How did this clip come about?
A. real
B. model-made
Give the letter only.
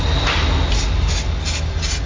A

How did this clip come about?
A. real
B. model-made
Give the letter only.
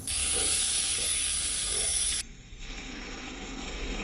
B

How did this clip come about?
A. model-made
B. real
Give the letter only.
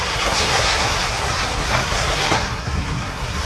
A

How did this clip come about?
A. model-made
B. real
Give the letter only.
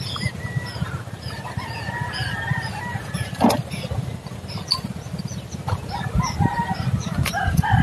B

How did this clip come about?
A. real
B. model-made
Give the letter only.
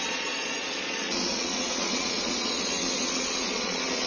B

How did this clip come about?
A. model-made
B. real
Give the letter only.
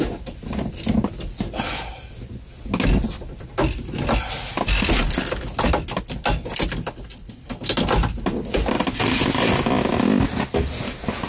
B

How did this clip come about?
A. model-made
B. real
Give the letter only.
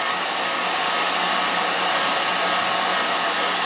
B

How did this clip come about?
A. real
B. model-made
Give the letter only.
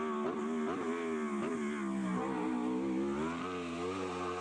A